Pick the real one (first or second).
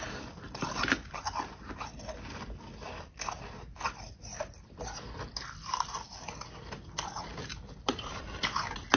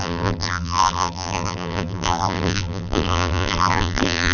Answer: first